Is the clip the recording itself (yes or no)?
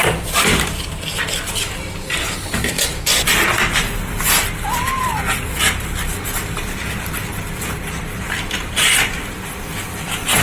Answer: no